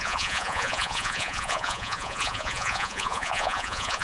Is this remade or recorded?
remade